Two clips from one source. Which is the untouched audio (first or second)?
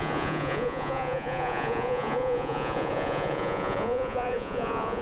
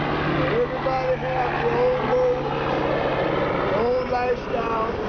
second